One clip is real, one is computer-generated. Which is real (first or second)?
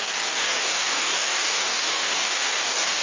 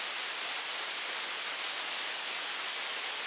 second